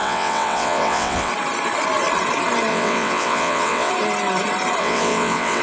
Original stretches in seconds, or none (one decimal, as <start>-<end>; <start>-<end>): 1.3-2.7; 3.9-4.8